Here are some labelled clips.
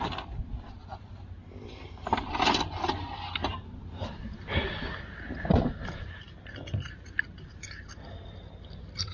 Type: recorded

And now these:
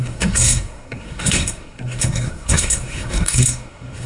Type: remade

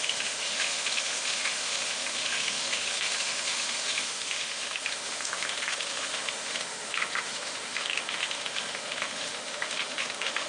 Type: remade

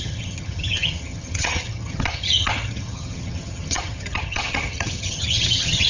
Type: remade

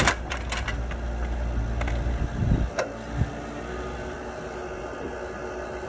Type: recorded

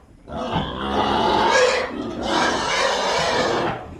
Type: recorded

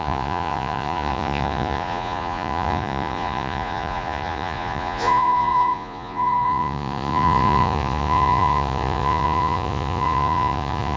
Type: remade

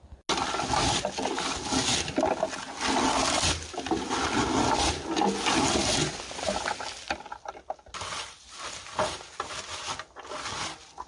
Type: recorded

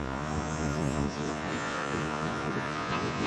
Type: remade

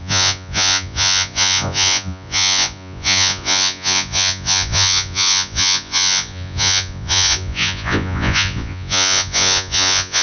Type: remade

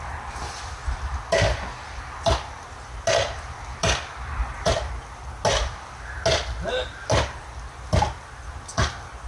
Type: recorded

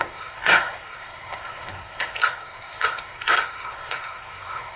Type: remade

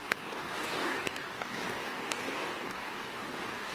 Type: remade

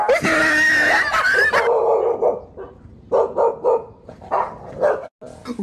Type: recorded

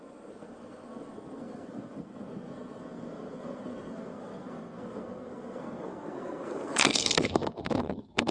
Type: remade